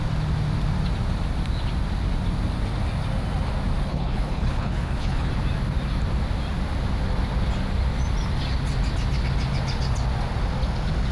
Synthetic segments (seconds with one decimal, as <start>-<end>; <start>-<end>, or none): 3.9-5.3